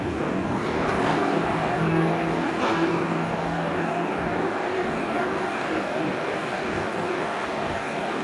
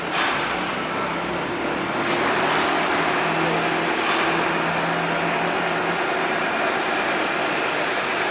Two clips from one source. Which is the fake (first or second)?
first